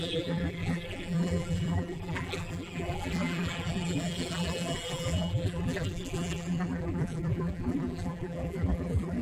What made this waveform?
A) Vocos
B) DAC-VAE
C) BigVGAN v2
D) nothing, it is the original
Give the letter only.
C